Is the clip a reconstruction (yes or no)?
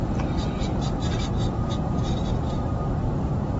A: no